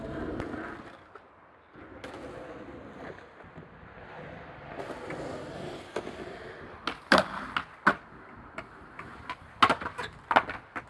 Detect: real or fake real